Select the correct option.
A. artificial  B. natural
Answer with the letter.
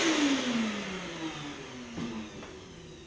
B